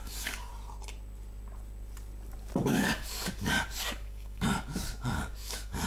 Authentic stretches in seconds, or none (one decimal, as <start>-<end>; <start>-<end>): 0.5-2.6